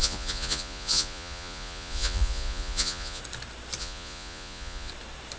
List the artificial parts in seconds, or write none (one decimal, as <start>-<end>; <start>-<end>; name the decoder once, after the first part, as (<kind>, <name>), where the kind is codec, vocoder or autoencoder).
0.0-3.2 (vocoder, Vocos); 3.8-4.9